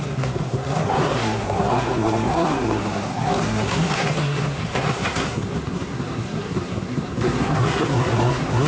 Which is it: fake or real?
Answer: fake